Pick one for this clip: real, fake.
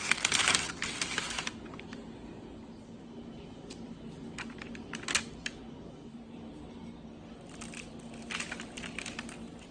real